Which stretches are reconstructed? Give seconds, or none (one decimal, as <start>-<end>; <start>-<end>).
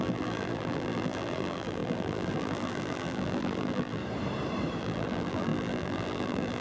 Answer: 0.0-4.0; 4.8-6.6